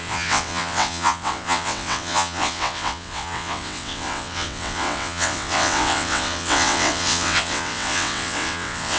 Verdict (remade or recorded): remade